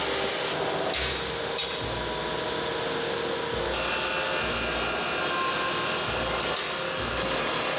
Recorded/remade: recorded